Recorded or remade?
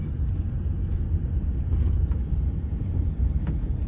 recorded